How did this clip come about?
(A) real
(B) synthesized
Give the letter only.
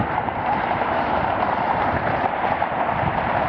B